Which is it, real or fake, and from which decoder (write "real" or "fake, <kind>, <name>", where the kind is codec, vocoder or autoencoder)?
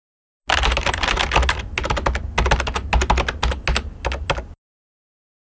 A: real